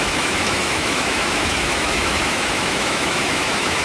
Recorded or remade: remade